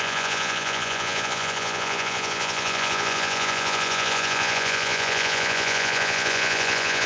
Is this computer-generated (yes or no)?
yes